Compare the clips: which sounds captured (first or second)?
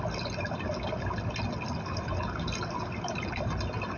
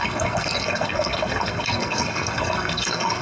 first